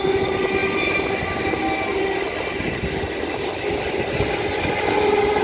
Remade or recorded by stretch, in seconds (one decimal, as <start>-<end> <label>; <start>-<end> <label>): 0.0-5.4 recorded